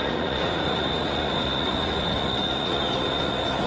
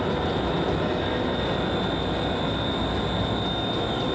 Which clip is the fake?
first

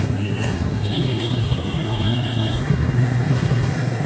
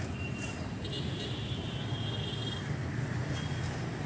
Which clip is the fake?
first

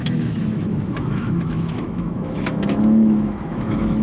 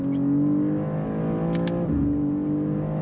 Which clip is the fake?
first